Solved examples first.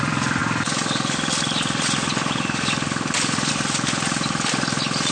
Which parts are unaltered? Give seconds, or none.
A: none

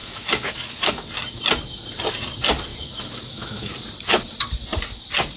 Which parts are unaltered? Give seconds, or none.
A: 1.1-2.7; 3.7-5.4

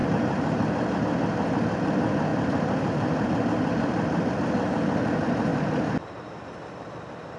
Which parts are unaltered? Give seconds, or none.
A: 1.0-2.3; 4.3-5.5; 6.5-7.4

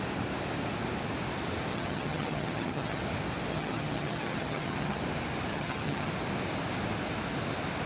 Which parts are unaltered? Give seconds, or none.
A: 0.0-1.7; 3.0-3.5; 5.0-5.5; 6.1-7.9

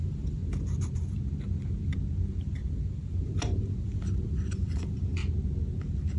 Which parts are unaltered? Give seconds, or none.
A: 0.4-3.1; 5.2-6.2

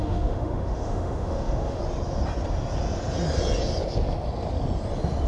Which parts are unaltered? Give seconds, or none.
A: 1.8-5.3